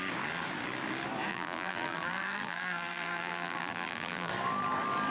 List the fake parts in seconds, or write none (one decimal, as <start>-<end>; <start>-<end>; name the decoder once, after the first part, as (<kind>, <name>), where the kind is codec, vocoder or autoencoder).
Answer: 1.3-4.3 (vocoder, BigVGAN v2)